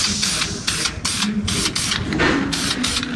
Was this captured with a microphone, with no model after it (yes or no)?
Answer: yes